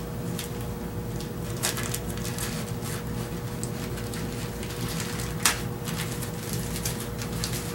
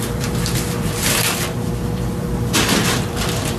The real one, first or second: first